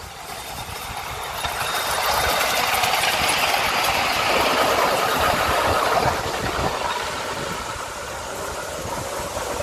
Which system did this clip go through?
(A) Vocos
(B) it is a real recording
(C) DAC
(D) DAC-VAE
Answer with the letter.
B